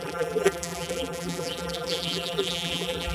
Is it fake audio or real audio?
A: fake